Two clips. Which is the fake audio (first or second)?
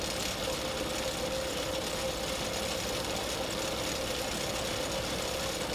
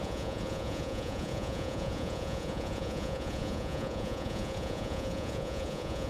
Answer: second